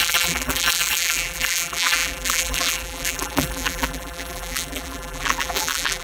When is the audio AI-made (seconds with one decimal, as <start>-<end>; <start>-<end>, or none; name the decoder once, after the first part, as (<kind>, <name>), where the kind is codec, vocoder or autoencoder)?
0.0-6.0 (vocoder, BigVGAN v2)